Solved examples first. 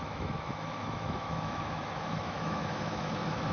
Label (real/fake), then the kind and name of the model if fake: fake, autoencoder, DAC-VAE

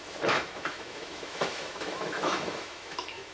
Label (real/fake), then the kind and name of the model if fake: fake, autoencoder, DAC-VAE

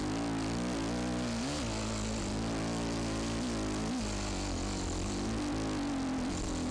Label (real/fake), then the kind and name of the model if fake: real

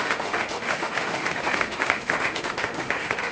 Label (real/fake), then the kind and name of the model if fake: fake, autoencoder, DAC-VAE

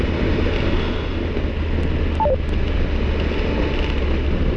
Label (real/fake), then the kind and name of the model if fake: real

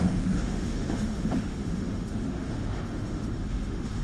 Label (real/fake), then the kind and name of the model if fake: fake, autoencoder, DAC-VAE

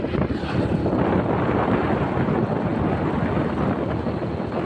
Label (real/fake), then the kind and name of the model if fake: real